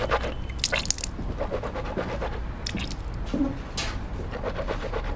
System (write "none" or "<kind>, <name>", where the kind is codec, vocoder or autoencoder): none